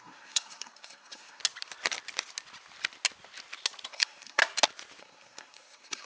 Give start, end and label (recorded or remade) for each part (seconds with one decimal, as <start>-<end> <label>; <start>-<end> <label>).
0.0-1.4 remade; 1.4-3.9 recorded; 3.9-4.4 remade; 4.4-5.0 recorded; 5.0-6.1 remade